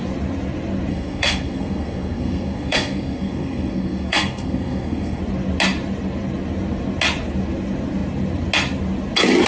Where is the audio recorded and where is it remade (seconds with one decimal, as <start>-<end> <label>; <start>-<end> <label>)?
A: 0.0-0.9 recorded; 0.9-5.2 remade; 5.2-9.5 recorded